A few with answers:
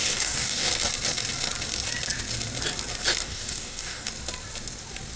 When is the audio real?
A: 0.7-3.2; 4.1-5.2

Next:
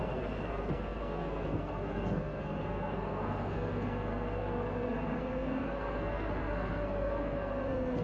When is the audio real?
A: none